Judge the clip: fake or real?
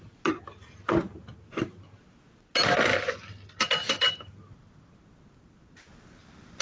real